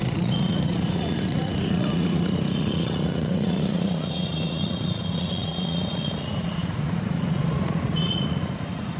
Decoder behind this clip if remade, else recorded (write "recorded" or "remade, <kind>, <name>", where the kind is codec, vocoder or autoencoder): remade, vocoder, Vocos